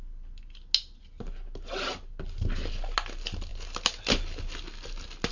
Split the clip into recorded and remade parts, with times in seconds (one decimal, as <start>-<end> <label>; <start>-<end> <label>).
0.0-5.3 recorded